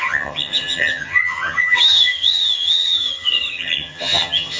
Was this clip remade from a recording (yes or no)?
yes